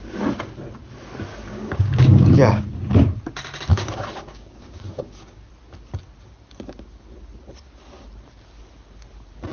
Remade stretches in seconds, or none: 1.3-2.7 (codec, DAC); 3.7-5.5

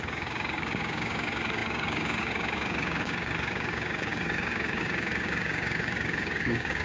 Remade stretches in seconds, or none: 0.0-6.8 (codec, DAC)

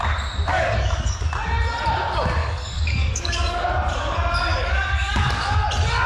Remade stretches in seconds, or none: 0.5-1.2 (codec, DAC); 2.4-3.7; 4.5-5.6

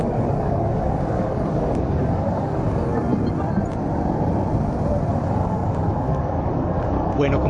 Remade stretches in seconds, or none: 0.0-2.9 (codec, DAC); 5.1-7.5

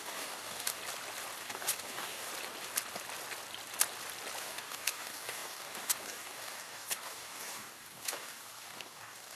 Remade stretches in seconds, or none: 0.0-0.8 (codec, DAC); 1.4-2.3; 4.4-9.3

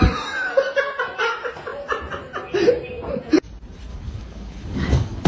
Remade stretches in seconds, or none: 3.9-5.3 (codec, DAC)

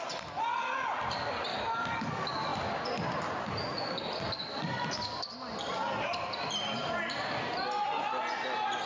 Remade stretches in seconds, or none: 1.5-2.1 (codec, DAC)

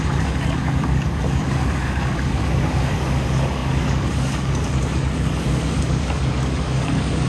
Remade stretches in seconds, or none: 0.0-7.3 (codec, DAC)